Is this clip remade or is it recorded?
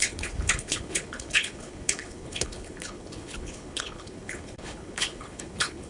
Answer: remade